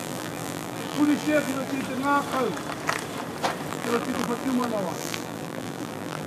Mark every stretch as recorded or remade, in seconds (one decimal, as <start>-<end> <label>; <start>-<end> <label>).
0.0-1.7 remade; 1.7-3.7 recorded; 3.7-6.3 remade